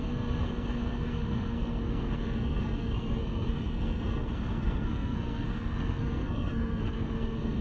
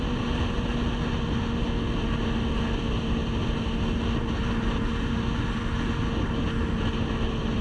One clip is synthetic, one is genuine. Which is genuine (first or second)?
second